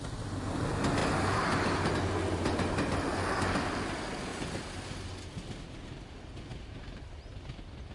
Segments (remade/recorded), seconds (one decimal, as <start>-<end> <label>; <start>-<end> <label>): 0.0-1.0 recorded; 1.0-1.9 remade; 1.9-6.5 recorded; 6.5-7.3 remade; 7.3-7.9 recorded